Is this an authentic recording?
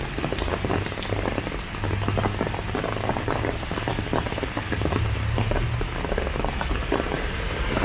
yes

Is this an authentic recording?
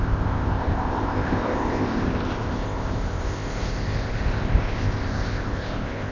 no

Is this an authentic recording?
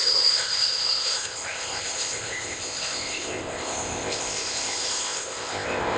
no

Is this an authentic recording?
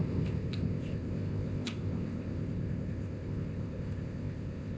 no